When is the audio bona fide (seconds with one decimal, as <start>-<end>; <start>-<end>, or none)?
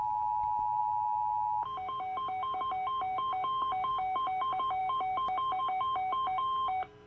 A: 0.0-7.1